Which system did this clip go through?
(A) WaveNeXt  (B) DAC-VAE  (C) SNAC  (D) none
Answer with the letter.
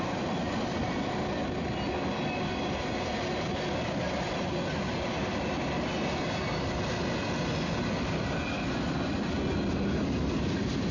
D